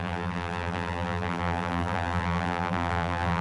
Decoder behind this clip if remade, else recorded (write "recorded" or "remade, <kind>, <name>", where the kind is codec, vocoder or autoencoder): remade, vocoder, BigVGAN v2